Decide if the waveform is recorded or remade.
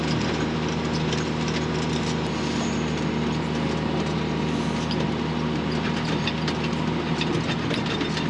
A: recorded